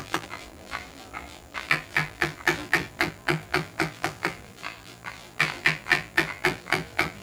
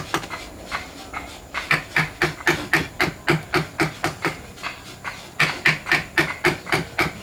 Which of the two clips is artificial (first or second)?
first